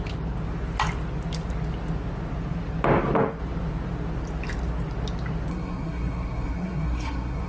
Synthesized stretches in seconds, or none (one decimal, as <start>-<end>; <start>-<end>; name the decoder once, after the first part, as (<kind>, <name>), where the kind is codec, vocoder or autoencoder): 5.5-7.5 (codec, SNAC)